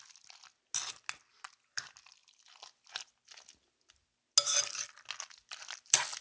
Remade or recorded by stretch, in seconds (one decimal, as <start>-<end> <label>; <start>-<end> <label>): 0.0-6.2 recorded

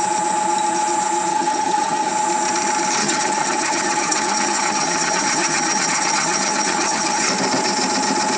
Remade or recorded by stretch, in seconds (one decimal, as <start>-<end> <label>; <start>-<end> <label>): 0.0-1.3 recorded; 1.3-2.1 remade; 2.1-3.0 recorded; 3.0-7.3 remade; 7.3-8.4 recorded